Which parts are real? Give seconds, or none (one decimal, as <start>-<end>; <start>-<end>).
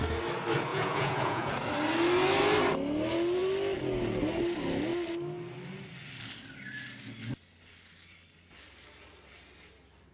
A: 0.0-0.7; 1.5-10.1